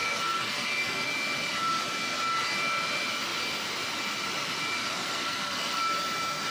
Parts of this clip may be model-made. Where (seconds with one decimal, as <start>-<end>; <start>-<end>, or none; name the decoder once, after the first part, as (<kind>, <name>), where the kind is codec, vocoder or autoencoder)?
0.0-1.1 (codec, SNAC); 4.8-5.8